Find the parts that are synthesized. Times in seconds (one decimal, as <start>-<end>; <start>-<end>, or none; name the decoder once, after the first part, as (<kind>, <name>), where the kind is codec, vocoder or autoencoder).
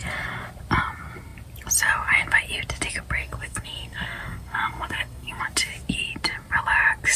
3.2-5.4 (codec, SNAC)